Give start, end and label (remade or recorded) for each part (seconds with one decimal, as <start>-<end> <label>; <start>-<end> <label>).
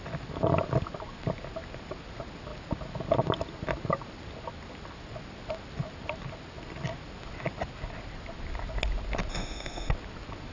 0.0-9.3 recorded; 9.3-9.9 remade; 9.9-10.5 recorded